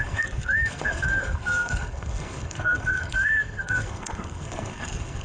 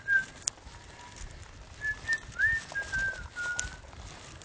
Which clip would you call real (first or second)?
second